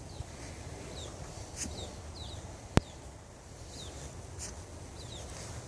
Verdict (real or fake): real